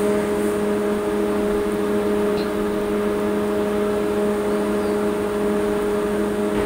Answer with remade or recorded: recorded